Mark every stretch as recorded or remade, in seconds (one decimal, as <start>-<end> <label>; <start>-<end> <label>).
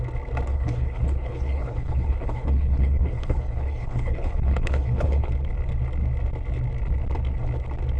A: 0.0-0.5 recorded; 0.5-5.3 remade; 5.3-8.0 recorded